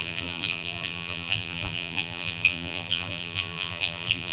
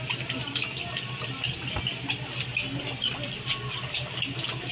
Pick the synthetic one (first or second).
first